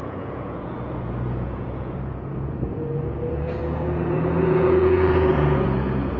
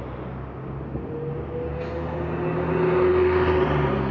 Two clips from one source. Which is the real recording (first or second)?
second